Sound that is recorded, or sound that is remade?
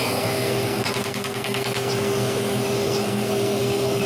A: remade